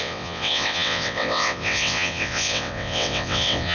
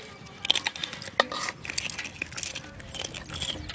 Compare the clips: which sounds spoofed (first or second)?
first